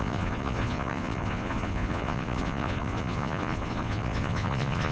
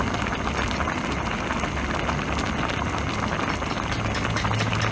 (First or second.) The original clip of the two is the second